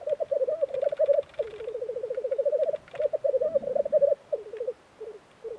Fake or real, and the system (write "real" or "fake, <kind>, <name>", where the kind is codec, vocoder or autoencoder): real